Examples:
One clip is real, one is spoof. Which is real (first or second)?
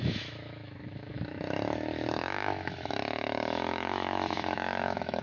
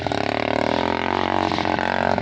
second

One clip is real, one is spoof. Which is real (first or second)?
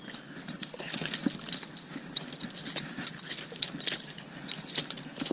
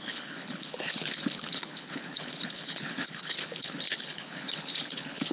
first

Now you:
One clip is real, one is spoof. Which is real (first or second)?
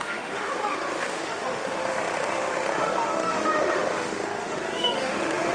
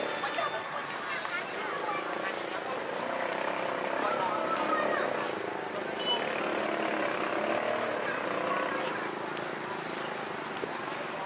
second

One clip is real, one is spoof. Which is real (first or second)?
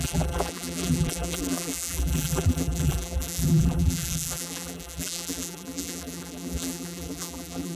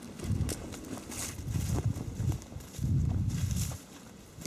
second